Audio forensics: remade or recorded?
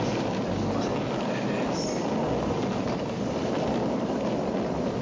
recorded